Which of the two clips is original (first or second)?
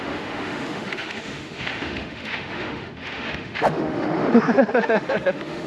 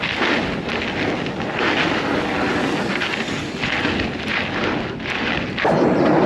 second